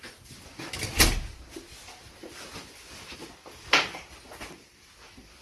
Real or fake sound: real